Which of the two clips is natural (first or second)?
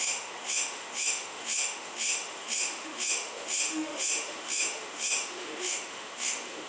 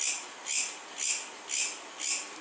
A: second